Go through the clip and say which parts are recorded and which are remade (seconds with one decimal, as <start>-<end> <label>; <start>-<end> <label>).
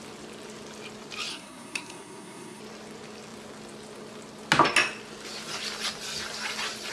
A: 0.0-1.3 recorded; 1.3-2.6 remade; 2.6-6.9 recorded